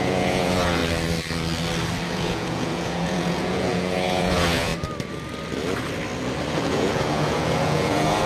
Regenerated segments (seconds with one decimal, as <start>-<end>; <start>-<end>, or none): 0.0-0.8; 2.1-4.7; 6.5-8.3